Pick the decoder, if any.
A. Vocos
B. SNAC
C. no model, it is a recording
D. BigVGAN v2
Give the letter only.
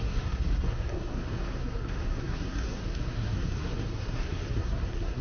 B